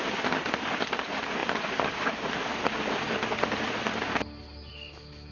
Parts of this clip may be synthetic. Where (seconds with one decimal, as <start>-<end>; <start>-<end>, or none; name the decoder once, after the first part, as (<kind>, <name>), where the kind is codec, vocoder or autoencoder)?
none